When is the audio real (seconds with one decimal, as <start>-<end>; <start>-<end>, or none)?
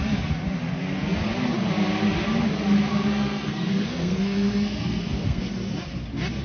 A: 0.0-2.9; 5.5-6.4